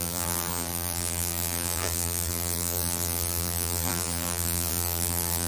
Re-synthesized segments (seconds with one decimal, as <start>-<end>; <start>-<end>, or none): 0.0-5.5